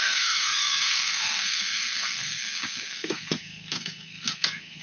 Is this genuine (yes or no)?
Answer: no